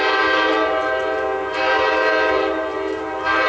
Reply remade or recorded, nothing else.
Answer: recorded